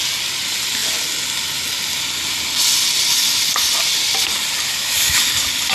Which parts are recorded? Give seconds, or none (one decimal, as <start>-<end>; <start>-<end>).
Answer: 0.0-4.7; 5.2-5.7